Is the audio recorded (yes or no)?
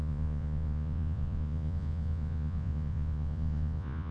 no